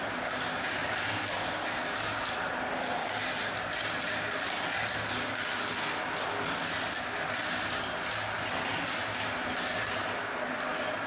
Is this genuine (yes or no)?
yes